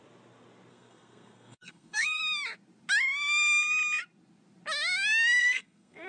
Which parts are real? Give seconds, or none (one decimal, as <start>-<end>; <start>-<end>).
0.0-0.7; 2.2-5.4